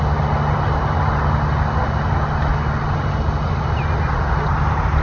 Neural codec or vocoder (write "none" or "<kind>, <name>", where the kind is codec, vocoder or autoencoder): none